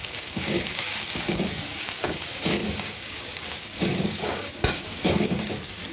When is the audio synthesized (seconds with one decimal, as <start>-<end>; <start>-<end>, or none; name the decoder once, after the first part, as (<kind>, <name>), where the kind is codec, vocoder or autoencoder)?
0.0-5.9 (codec, DAC)